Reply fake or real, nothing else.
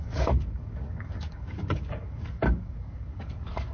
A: fake